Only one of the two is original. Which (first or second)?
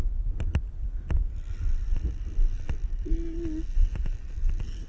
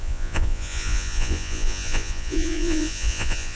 first